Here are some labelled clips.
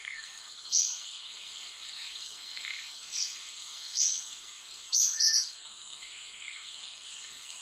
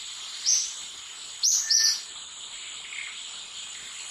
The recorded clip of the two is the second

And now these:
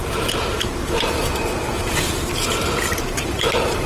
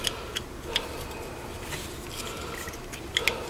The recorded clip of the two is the second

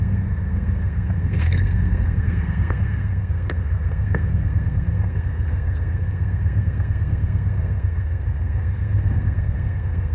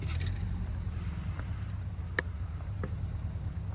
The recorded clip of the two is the second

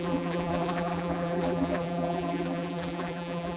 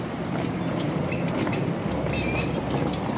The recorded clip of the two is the second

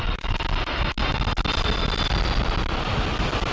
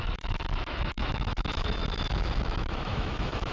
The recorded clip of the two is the first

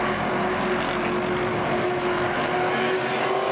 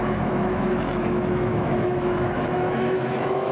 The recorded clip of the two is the first